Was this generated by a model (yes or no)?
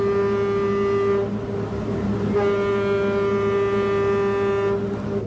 no